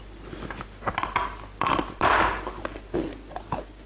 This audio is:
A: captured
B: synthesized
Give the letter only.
A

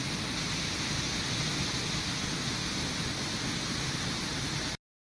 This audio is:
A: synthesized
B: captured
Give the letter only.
B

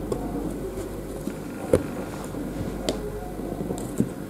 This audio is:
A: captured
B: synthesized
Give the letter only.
A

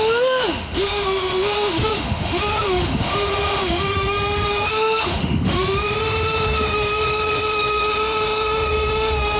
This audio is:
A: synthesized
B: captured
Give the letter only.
A